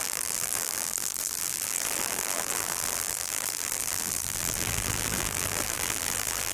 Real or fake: fake